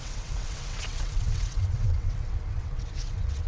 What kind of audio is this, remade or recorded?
remade